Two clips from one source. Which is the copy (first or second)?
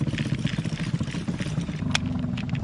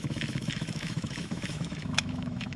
second